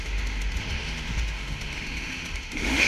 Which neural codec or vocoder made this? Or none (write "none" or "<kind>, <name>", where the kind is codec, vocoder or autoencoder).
autoencoder, DAC-VAE